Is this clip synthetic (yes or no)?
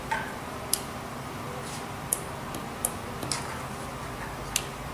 no